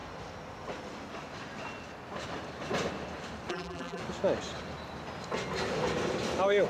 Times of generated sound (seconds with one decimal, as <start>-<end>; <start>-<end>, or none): 3.5-4.0